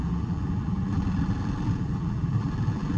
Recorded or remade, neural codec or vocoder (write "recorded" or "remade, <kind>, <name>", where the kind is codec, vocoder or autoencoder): remade, vocoder, BigVGAN v2